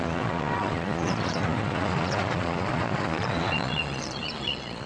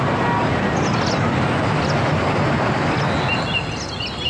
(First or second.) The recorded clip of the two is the second